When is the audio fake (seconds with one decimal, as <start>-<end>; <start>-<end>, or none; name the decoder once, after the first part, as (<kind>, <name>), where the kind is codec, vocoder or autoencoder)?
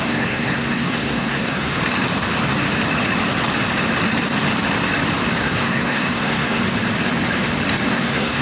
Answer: 0.0-1.8 (codec, SNAC); 5.4-6.6; 7.9-8.4